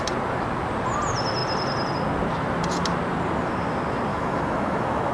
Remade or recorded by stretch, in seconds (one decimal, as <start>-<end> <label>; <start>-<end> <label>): 0.0-4.1 recorded; 4.1-5.1 remade